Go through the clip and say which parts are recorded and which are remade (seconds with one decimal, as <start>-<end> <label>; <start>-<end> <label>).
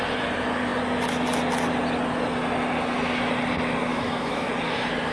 0.0-3.9 recorded; 3.9-4.5 remade; 4.5-5.1 recorded